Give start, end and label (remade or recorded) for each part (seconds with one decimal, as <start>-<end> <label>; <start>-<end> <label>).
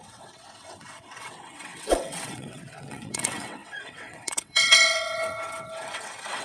0.0-6.4 remade